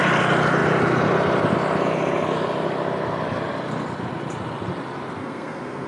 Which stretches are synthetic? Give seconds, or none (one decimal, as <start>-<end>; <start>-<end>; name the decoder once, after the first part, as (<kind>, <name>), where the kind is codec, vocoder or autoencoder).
5.2-5.9 (codec, SNAC)